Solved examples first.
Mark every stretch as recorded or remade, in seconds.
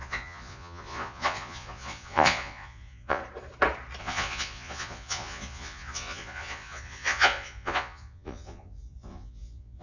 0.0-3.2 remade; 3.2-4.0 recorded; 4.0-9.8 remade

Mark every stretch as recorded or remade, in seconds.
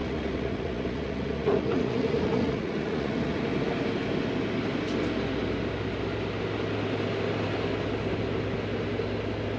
0.0-3.4 remade; 3.4-9.6 recorded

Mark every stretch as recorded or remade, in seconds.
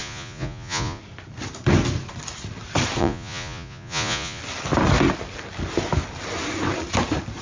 0.0-1.0 remade; 1.0-3.0 recorded; 3.0-4.4 remade; 4.4-7.4 recorded